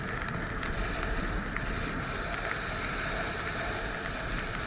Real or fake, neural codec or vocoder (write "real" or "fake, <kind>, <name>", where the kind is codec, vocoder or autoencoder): real